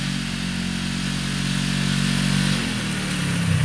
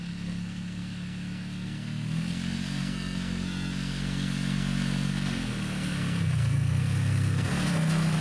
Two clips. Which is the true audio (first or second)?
first